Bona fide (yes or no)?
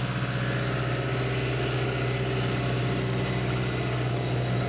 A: yes